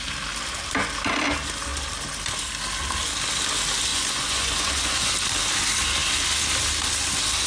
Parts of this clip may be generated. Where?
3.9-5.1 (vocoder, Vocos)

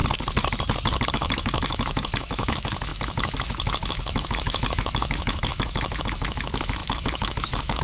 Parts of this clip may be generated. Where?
1.1-7.8 (autoencoder, DAC-VAE)

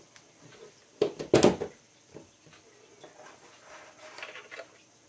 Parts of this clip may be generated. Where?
none